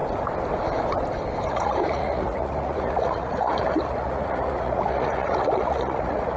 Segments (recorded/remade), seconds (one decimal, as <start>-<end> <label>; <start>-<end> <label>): 0.0-1.5 recorded; 1.5-6.4 remade